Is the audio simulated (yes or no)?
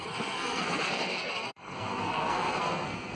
yes